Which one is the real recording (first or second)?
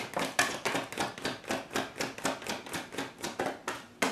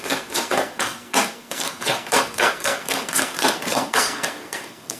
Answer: first